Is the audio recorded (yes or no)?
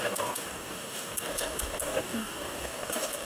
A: no